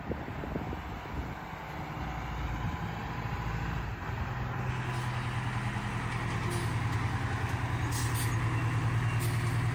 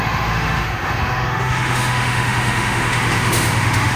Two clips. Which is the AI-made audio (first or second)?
second